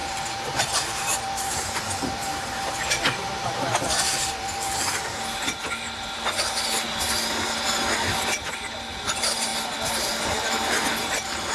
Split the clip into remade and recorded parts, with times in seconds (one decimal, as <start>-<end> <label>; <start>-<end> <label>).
0.0-2.4 remade; 2.4-3.2 recorded; 3.2-5.2 remade; 5.2-11.5 recorded